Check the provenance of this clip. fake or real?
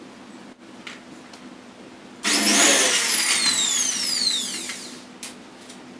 real